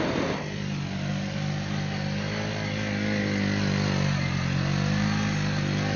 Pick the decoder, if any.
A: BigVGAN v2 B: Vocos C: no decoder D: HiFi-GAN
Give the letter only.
C